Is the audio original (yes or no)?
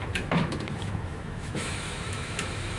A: no